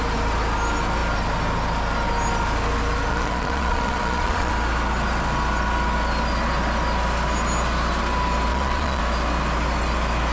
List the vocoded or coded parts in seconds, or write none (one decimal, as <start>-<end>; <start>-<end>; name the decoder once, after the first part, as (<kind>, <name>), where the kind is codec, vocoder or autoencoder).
3.1-4.5 (vocoder, Vocos); 8.5-9.0